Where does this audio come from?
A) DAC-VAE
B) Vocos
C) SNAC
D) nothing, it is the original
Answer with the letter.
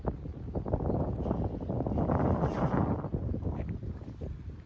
D